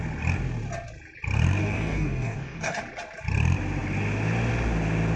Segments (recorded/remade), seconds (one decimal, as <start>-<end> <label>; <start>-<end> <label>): 0.0-1.6 recorded; 1.6-2.8 remade; 2.8-5.2 recorded